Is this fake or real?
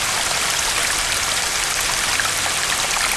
real